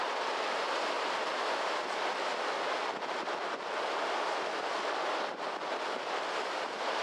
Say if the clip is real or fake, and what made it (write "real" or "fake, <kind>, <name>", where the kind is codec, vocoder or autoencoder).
fake, vocoder, BigVGAN v2